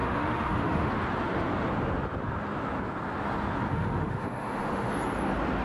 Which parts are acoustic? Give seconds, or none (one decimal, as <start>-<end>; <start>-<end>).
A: 0.9-3.7; 4.9-5.6